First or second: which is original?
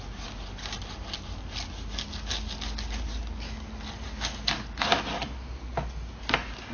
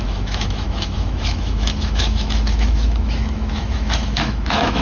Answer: first